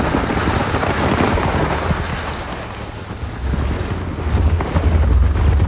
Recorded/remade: recorded